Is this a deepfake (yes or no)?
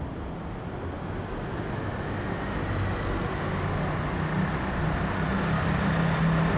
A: no